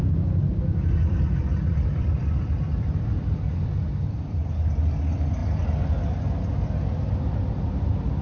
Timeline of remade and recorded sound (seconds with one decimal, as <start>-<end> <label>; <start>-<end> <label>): 0.0-0.5 recorded; 0.5-3.7 remade; 3.7-8.2 recorded